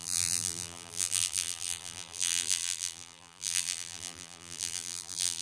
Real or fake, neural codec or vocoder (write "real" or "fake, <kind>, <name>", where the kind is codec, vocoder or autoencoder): fake, vocoder, BigVGAN v2